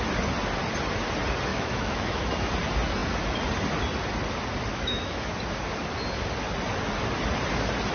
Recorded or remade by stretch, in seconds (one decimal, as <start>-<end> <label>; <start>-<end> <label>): 0.0-1.5 recorded; 1.5-2.5 remade; 2.5-4.7 recorded; 4.7-5.3 remade; 5.3-7.9 recorded